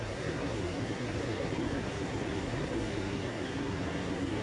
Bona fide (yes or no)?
no